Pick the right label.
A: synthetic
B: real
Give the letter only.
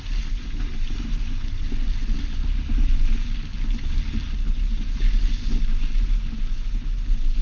B